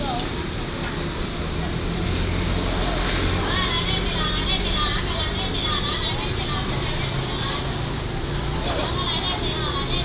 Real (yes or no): yes